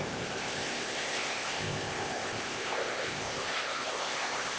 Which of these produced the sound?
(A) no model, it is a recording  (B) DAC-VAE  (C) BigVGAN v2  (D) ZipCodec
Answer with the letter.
D